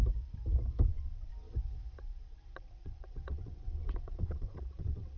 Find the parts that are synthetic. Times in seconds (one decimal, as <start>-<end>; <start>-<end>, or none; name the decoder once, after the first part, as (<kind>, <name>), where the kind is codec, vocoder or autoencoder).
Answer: 0.9-1.3 (vocoder, WaveNeXt); 2.0-5.2